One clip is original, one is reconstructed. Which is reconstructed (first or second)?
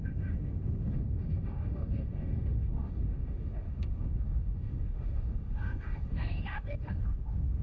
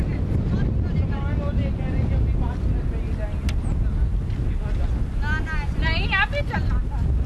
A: first